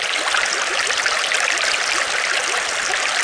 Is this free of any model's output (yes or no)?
yes